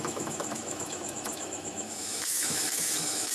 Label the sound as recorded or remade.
remade